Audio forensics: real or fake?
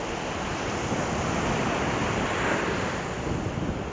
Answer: real